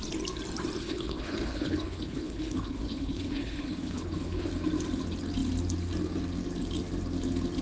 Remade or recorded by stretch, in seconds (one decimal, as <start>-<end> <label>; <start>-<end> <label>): 0.0-0.8 recorded; 0.8-4.5 remade; 4.5-7.6 recorded